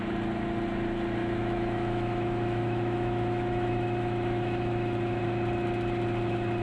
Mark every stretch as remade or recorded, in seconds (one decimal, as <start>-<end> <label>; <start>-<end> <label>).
0.0-1.2 recorded; 1.2-5.2 remade; 5.2-6.6 recorded